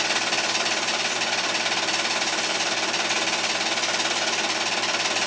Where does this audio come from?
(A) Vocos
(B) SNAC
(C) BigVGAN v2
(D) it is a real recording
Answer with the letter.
D